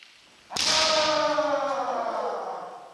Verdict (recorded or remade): recorded